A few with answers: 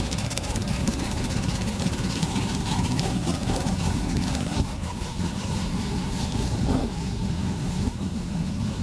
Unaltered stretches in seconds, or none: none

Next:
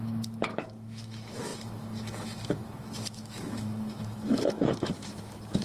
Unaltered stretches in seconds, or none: none

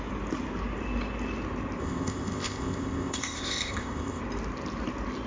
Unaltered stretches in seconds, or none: 0.0-1.8; 4.2-5.3